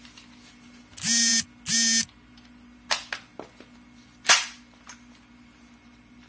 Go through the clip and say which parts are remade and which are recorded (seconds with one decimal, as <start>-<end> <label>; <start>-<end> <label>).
0.0-6.3 recorded